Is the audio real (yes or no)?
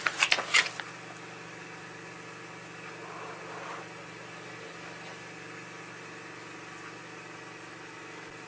yes